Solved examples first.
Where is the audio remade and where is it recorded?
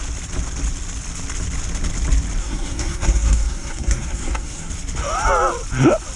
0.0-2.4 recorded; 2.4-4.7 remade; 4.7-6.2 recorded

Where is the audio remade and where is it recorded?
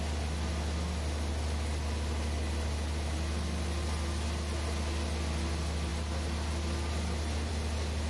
0.0-8.1 recorded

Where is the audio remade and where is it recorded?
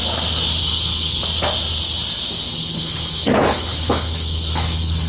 0.0-0.6 recorded; 0.6-1.2 remade; 1.2-2.5 recorded; 2.5-5.1 remade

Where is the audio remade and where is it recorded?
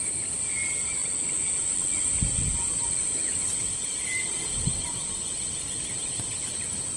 0.0-7.0 recorded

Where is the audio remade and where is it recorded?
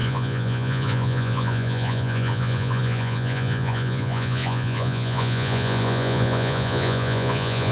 0.0-7.7 remade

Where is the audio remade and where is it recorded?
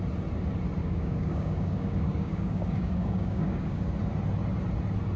0.0-0.8 recorded; 0.8-3.9 remade; 3.9-5.2 recorded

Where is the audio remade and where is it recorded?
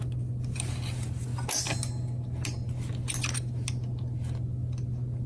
0.0-5.3 recorded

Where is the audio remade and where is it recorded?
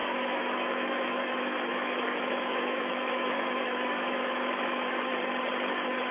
0.0-5.1 remade; 5.1-6.1 recorded